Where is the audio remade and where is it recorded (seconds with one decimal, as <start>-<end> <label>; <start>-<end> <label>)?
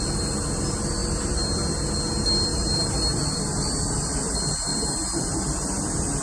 0.0-2.5 recorded; 2.5-3.4 remade; 3.4-6.2 recorded